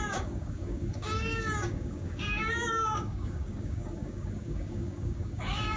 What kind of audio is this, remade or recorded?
remade